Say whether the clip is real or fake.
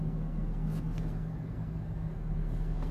fake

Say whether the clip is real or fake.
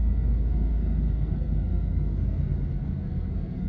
fake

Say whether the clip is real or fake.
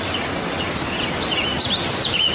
fake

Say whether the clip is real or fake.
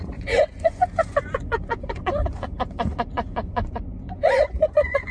fake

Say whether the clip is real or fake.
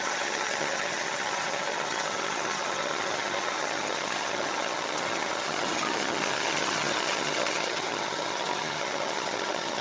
fake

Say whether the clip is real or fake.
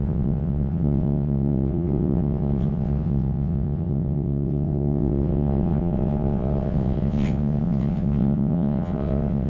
fake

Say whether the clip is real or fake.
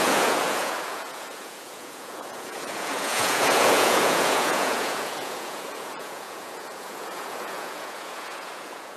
fake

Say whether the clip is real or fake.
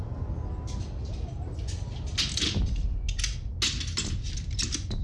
real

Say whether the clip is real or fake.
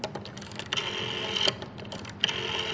real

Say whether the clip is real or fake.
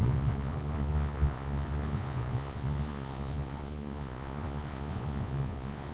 fake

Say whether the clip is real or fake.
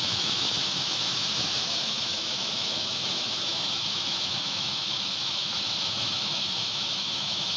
fake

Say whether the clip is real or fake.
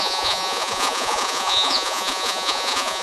fake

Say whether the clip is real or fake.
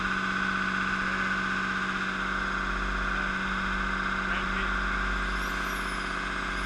real